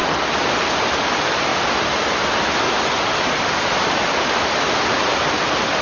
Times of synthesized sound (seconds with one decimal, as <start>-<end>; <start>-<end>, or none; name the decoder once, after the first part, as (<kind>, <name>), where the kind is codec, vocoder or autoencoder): none